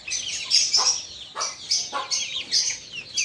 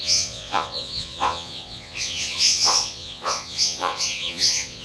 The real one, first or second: first